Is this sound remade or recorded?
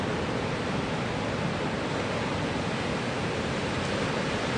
recorded